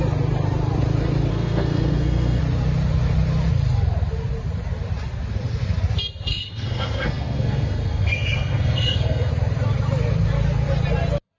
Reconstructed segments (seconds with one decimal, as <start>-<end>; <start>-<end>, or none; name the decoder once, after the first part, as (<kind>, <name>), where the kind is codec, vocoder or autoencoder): 1.3-2.4 (codec, SNAC); 6.3-9.3